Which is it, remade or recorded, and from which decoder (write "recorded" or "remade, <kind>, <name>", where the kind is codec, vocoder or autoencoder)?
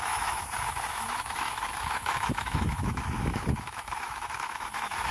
remade, autoencoder, DAC-VAE